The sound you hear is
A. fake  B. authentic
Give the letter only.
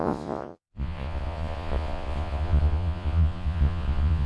A